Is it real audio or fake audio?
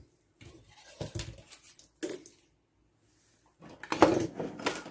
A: real